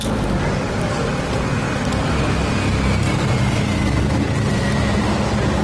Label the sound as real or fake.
real